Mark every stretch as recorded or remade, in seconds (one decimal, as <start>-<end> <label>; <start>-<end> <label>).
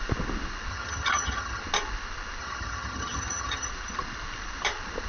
0.0-0.7 recorded; 0.7-1.6 remade; 1.6-2.4 recorded; 2.4-3.7 remade; 3.7-5.1 recorded